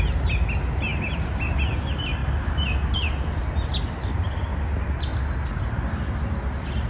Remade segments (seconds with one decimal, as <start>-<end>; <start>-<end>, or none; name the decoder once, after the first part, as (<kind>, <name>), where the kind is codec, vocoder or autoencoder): none